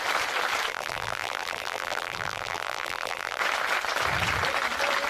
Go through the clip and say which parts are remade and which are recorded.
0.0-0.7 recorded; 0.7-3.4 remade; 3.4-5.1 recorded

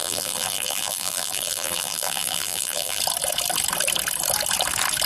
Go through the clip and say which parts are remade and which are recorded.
0.0-3.0 remade; 3.0-5.1 recorded

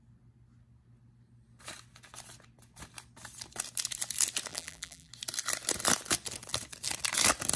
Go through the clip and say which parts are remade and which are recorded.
0.0-4.5 recorded; 4.5-5.1 remade; 5.1-7.6 recorded

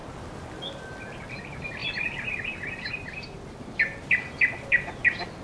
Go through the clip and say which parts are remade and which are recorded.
0.0-5.4 recorded

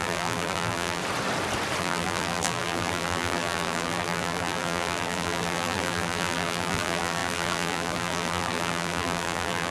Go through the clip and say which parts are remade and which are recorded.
0.0-1.0 remade; 1.0-1.8 recorded; 1.8-9.7 remade